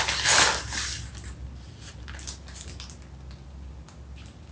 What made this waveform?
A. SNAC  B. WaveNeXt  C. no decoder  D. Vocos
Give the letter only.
C